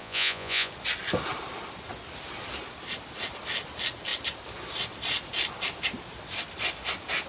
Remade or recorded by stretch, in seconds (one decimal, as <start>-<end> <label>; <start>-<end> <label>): 0.0-0.7 remade; 0.7-7.3 recorded